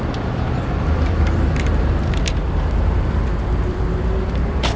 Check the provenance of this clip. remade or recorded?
remade